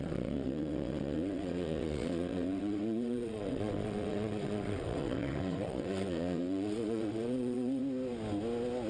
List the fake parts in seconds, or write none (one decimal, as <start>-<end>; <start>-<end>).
0.0-7.8